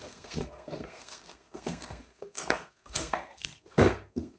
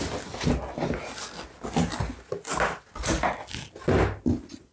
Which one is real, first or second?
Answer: second